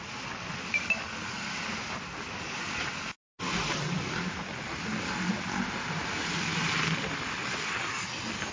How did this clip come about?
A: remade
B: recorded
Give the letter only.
B